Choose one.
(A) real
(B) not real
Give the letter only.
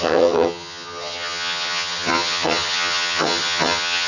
B